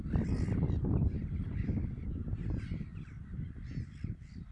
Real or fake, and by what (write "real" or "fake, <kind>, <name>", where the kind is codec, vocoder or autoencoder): fake, vocoder, BigVGAN v2